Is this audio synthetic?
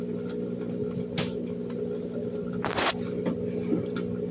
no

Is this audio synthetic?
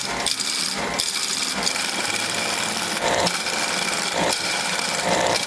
yes